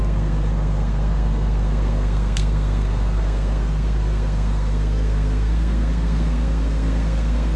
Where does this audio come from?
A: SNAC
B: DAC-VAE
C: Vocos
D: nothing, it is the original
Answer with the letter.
A